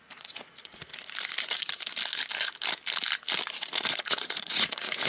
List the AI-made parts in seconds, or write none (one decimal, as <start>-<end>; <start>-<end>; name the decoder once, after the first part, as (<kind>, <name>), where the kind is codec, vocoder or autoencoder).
0.0-0.8 (vocoder, Vocos); 3.9-5.1